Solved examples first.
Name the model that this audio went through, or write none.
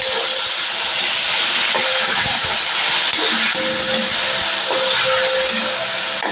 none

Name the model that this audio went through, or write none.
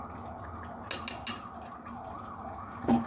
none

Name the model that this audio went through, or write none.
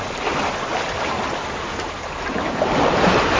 none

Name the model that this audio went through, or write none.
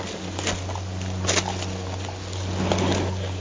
none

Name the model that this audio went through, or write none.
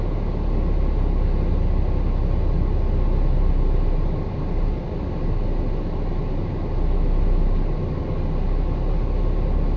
none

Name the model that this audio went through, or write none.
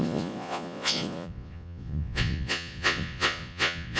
vocoder, Vocos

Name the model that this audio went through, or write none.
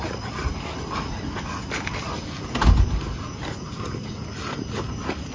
none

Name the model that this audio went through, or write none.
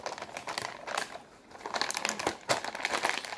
none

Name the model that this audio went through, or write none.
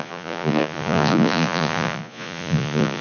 vocoder, Vocos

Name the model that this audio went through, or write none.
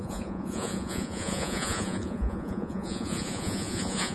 vocoder, Vocos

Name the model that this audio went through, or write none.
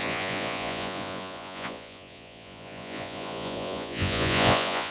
vocoder, Vocos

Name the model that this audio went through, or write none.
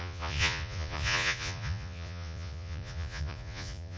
vocoder, Vocos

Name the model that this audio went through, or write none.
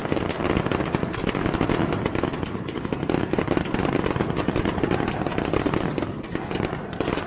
none